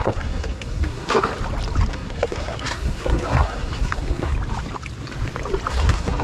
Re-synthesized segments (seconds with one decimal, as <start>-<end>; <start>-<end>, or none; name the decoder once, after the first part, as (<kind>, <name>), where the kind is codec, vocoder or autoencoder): 0.0-1.3 (codec, SNAC); 1.9-4.3; 5.7-6.2